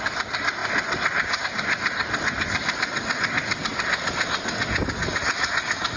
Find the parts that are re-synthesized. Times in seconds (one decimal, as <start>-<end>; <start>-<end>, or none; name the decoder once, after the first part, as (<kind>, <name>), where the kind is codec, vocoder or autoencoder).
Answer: none